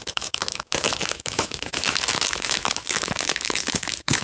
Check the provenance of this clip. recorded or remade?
remade